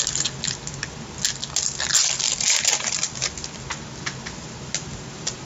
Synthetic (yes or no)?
no